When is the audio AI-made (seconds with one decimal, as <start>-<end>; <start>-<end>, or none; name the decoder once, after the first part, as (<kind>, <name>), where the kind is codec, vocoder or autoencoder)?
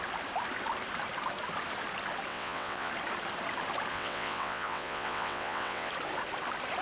2.3-2.9 (vocoder, WaveNeXt); 3.9-5.9